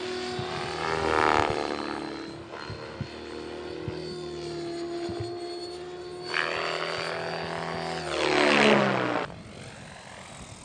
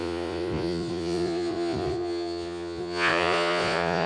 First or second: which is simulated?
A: second